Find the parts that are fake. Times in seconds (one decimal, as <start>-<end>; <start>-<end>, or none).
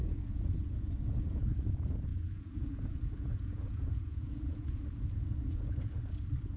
0.0-1.4; 2.1-6.1